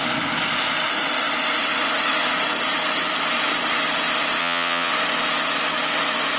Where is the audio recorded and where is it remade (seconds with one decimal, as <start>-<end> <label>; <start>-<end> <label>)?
0.0-4.4 recorded; 4.4-4.9 remade; 4.9-6.4 recorded